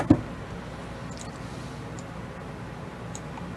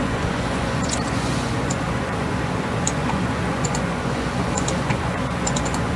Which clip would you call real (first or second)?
first